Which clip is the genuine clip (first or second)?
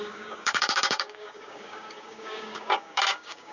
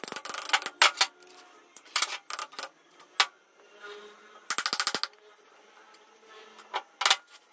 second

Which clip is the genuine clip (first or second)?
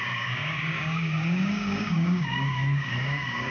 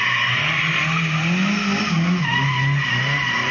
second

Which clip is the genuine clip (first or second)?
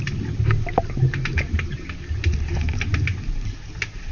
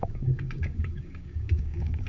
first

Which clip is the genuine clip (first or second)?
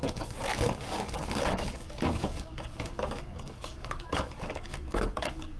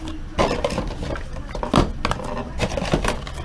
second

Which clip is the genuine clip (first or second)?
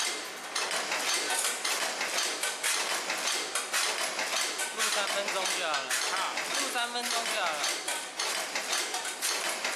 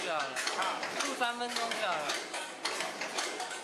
first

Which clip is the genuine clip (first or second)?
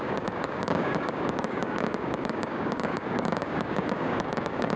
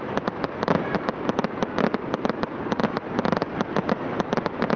second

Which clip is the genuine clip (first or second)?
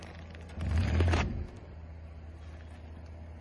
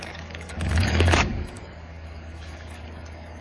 first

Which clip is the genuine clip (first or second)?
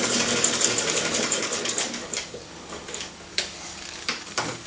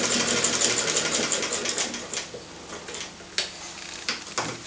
second